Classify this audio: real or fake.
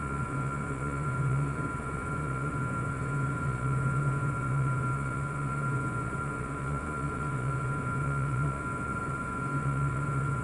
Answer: fake